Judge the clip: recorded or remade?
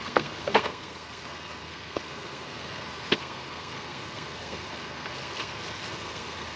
remade